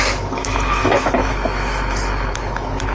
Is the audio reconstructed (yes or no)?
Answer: yes